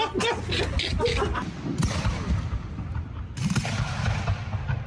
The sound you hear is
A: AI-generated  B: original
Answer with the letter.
B